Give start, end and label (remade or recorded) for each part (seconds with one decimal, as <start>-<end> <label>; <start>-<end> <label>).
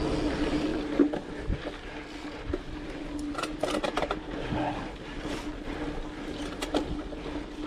0.0-7.7 recorded